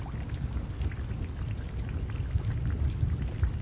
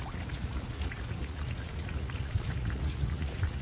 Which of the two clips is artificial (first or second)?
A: second